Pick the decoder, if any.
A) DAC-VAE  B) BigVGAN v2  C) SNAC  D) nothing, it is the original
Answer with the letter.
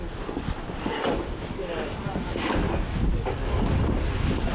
D